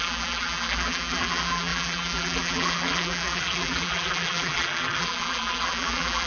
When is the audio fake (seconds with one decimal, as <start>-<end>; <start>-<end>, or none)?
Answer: 0.0-6.3